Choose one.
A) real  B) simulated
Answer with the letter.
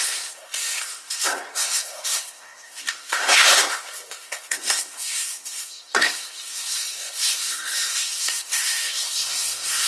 B